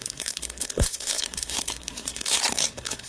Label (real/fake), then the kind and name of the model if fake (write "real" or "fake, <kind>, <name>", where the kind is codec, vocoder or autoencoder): fake, codec, SNAC